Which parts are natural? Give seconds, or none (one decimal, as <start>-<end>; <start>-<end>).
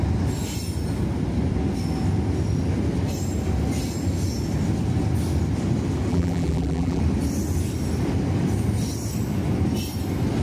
0.0-6.1; 7.0-10.4